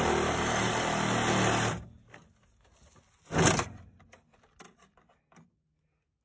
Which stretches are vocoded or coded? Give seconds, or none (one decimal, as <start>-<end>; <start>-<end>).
none